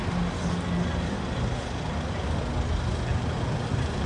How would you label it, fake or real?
real